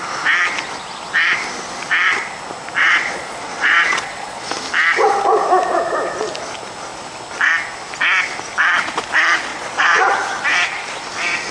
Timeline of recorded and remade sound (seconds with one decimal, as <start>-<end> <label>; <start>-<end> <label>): 0.0-2.8 recorded; 2.8-4.6 remade; 4.6-9.5 recorded; 9.5-10.1 remade; 10.1-11.5 recorded